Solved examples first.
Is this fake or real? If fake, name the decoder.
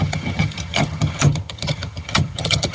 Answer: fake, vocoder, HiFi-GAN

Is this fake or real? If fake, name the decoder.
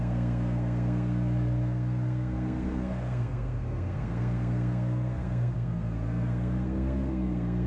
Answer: fake, codec, SNAC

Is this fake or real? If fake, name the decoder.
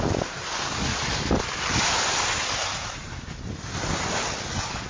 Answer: real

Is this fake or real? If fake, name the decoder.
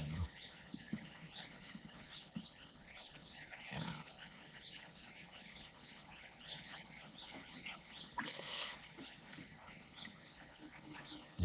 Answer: fake, codec, HILCodec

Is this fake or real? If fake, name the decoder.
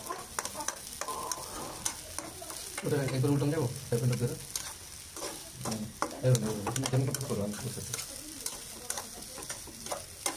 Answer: real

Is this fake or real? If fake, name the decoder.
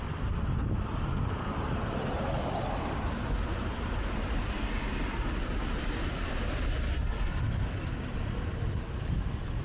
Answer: real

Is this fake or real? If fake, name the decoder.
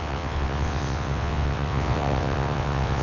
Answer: fake, vocoder, WaveNeXt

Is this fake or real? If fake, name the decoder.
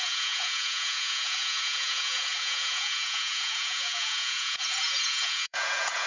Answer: fake, vocoder, Vocos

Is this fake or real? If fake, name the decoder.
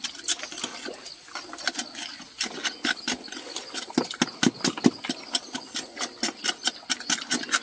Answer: real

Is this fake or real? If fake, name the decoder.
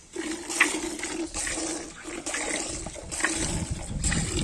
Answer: real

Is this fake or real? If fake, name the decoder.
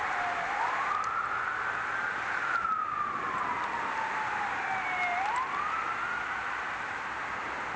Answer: real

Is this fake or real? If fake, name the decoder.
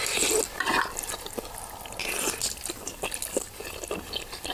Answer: real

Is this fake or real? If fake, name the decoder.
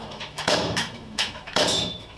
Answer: fake, autoencoder, DAC-VAE